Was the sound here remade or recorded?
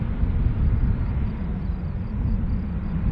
recorded